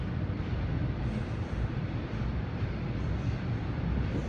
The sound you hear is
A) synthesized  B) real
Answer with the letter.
B